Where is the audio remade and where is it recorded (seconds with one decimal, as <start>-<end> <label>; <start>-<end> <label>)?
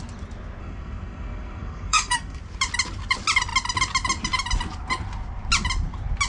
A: 0.0-0.6 recorded; 0.6-2.4 remade; 2.4-6.3 recorded